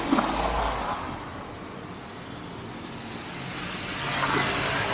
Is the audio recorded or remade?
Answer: recorded